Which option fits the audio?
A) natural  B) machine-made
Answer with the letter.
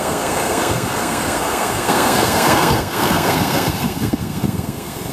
B